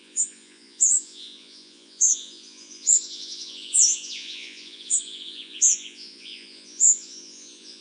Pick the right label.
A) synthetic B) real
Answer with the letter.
A